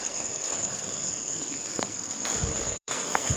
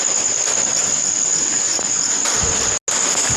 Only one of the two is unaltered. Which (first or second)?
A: second